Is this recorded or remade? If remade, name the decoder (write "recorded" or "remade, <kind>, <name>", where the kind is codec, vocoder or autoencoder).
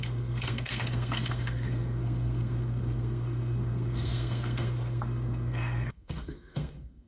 remade, codec, SNAC